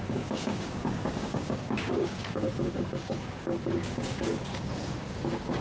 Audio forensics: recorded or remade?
remade